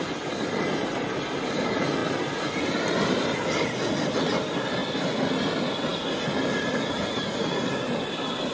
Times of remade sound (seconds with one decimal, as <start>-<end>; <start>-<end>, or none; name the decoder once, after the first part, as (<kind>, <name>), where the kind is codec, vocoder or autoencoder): none